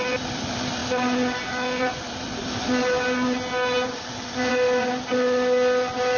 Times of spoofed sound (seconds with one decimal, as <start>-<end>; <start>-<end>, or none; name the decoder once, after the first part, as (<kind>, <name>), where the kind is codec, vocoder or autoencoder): none